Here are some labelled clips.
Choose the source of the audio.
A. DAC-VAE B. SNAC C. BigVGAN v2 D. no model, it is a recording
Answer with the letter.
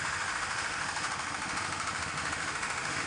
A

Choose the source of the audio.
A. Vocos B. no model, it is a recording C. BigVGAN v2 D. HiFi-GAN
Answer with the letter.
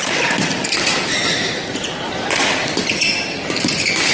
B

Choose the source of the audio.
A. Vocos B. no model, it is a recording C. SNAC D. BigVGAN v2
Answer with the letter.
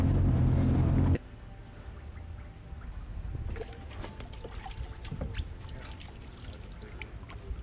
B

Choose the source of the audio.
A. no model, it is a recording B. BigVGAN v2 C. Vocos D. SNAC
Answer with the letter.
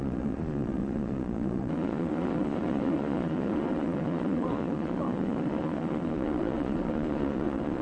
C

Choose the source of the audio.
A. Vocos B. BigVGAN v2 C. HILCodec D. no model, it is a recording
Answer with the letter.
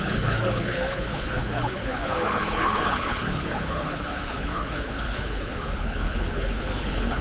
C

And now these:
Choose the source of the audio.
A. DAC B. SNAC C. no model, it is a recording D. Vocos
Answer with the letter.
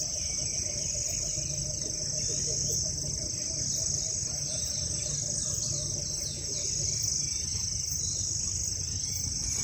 C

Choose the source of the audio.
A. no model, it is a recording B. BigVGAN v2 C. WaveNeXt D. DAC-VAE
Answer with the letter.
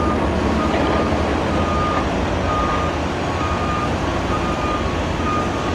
A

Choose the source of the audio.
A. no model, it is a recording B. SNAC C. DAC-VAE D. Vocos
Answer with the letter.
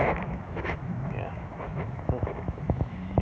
C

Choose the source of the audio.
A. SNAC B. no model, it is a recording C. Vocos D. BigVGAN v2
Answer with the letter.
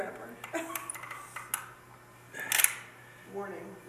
B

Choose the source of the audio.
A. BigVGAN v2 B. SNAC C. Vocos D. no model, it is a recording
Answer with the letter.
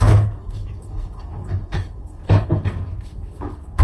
B